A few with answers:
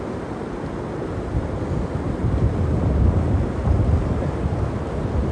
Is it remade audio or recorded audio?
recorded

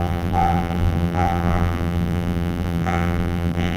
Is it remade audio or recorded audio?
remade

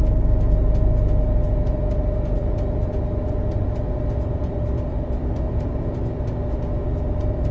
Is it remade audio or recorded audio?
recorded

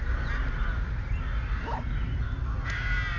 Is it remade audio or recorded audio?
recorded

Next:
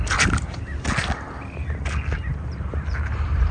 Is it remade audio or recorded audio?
recorded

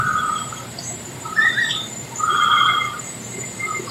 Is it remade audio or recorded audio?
remade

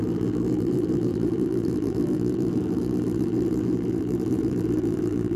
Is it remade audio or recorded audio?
remade